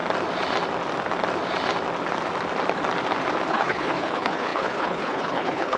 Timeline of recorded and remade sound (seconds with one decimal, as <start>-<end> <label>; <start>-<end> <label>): 0.0-3.5 recorded; 3.5-5.8 remade